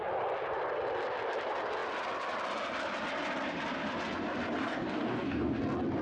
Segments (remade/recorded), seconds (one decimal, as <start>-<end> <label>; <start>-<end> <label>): 0.0-4.6 recorded; 4.6-5.6 remade; 5.6-6.0 recorded